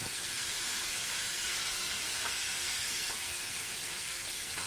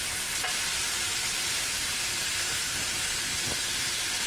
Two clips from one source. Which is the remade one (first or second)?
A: first